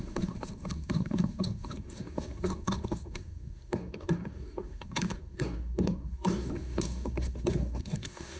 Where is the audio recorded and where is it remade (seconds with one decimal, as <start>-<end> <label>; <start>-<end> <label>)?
0.0-8.4 remade